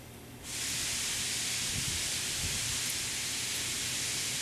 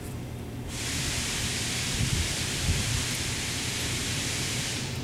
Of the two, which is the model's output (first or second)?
second